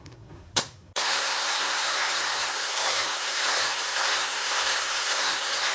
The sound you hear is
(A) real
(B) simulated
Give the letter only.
B